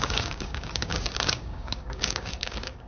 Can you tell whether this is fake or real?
fake